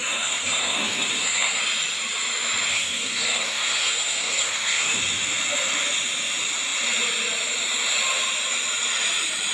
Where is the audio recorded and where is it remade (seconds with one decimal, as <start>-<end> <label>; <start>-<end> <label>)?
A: 0.0-1.6 remade; 1.6-2.7 recorded; 2.7-5.0 remade; 5.0-9.5 recorded